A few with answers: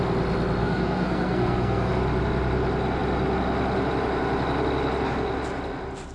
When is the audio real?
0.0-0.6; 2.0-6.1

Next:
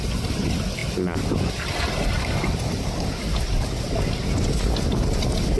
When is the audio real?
0.0-5.6

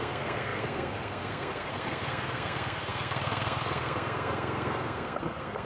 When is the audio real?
none

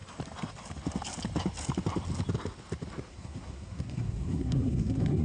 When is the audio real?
0.0-3.1

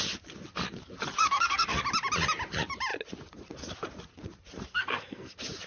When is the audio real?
0.0-1.2; 1.8-4.7; 5.3-5.7